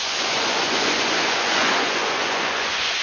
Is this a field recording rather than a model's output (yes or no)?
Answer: no